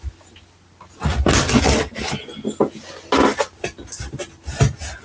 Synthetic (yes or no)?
no